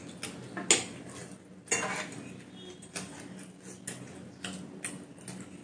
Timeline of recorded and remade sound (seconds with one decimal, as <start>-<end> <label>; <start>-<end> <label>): 0.0-5.6 recorded

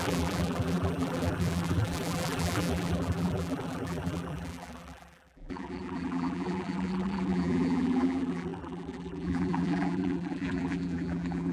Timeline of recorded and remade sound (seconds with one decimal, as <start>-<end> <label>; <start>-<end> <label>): 0.0-11.5 remade

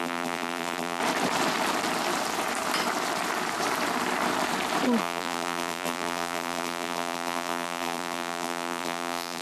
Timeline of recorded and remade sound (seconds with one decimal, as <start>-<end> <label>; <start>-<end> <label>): 0.0-1.0 remade; 1.0-5.0 recorded; 5.0-9.4 remade